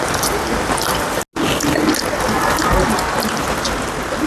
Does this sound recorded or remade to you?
recorded